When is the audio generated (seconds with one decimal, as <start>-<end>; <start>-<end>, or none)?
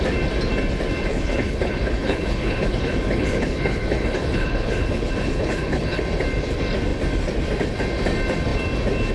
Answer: 1.1-6.0